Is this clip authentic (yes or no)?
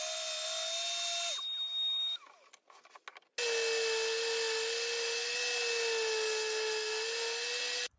yes